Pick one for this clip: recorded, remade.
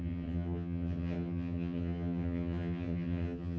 remade